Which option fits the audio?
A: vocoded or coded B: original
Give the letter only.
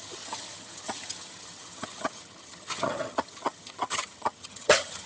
A